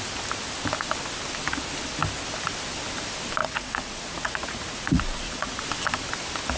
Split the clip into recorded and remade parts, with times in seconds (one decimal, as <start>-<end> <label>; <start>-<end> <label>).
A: 0.0-3.4 recorded; 3.4-5.6 remade; 5.6-6.6 recorded